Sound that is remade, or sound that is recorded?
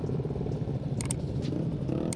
recorded